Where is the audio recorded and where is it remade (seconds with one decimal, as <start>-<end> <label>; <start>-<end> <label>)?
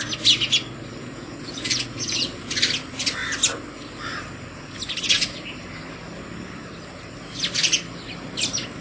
0.0-1.0 recorded; 1.0-2.5 remade; 2.5-8.8 recorded